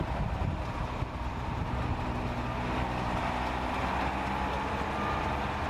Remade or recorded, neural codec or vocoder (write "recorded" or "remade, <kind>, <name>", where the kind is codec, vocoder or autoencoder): recorded